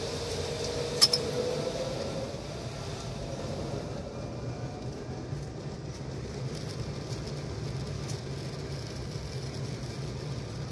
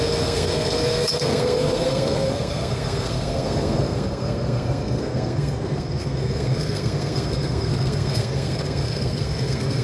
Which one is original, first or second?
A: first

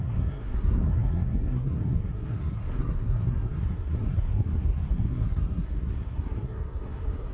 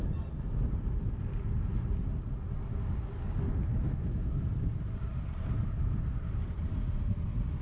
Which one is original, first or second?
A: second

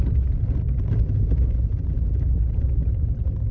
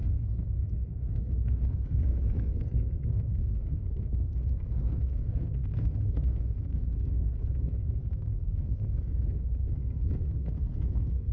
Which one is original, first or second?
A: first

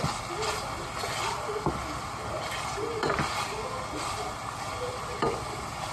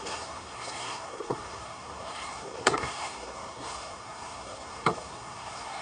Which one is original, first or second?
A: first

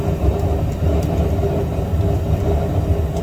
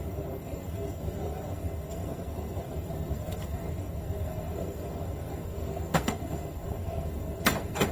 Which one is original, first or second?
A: first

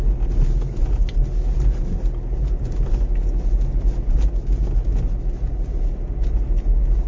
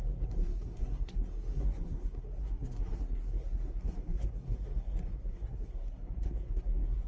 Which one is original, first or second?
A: first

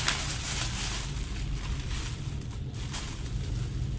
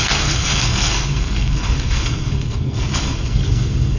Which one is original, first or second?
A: first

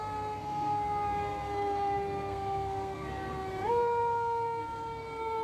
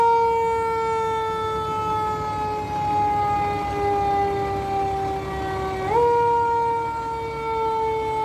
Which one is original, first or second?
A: second